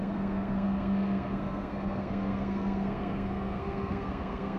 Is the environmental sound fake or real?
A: fake